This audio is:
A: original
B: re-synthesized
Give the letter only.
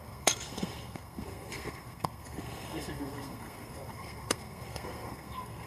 B